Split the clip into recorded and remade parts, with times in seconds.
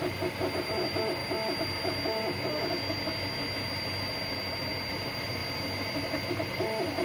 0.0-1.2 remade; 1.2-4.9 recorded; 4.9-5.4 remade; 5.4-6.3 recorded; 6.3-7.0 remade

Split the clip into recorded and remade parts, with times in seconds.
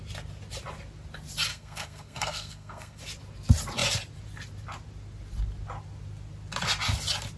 0.0-1.5 recorded; 1.5-3.0 remade; 3.0-7.4 recorded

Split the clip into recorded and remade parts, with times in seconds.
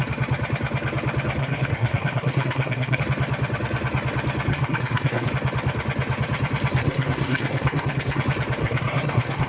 0.0-1.4 recorded; 1.4-3.0 remade; 3.0-4.5 recorded; 4.5-5.3 remade; 5.3-6.8 recorded; 6.8-8.2 remade; 8.2-8.6 recorded; 8.6-9.5 remade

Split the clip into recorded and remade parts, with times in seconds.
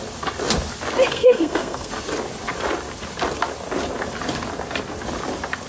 0.0-1.1 recorded; 1.1-1.9 remade; 1.9-5.7 recorded